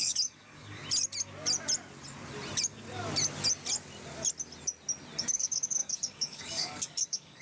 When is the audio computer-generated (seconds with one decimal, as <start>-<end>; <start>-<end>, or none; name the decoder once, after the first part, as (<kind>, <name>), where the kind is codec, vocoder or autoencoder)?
0.0-0.8 (codec, DAC); 5.2-7.4